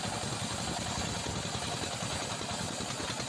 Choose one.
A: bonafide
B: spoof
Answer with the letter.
A